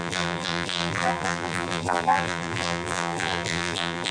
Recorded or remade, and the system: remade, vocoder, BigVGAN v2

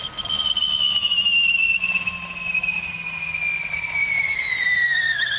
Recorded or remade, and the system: recorded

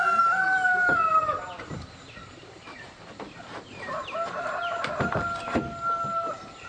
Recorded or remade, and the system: remade, vocoder, BigVGAN v2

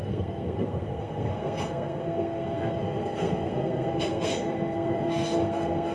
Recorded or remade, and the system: remade, codec, SNAC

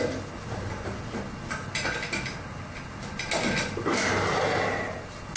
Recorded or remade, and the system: recorded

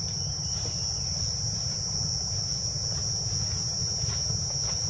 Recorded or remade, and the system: recorded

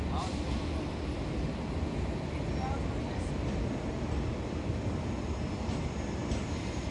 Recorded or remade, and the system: recorded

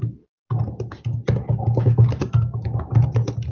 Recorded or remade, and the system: recorded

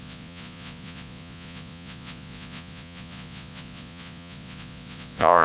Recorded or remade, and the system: remade, vocoder, Vocos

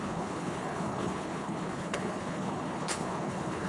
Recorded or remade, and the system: remade, codec, HILCodec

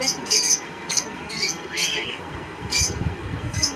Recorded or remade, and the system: remade, codec, SNAC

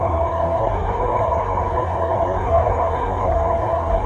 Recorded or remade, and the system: remade, codec, SNAC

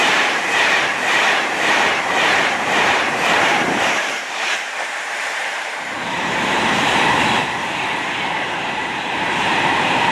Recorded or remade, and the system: remade, vocoder, BigVGAN v2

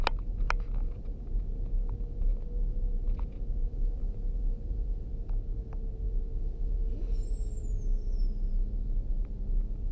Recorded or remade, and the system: recorded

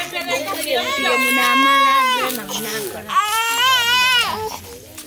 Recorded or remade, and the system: recorded